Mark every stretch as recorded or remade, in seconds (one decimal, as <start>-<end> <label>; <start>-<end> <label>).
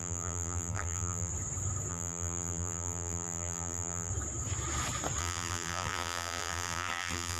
0.0-1.3 remade; 1.3-1.9 recorded; 1.9-4.1 remade; 4.1-5.2 recorded; 5.2-7.4 remade